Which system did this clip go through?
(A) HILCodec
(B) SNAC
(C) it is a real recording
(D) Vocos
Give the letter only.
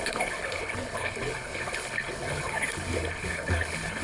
A